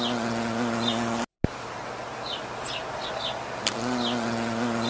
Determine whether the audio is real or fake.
real